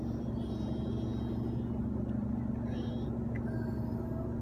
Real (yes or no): yes